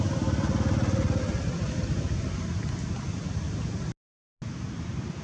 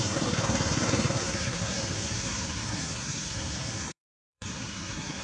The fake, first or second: second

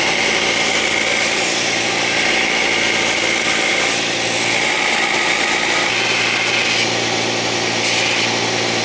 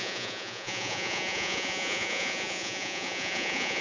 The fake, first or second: second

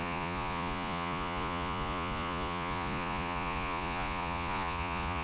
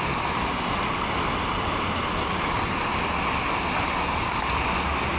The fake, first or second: first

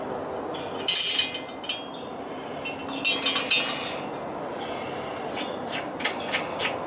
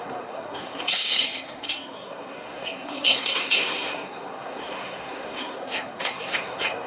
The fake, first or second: second